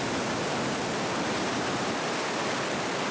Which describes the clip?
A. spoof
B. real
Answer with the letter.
B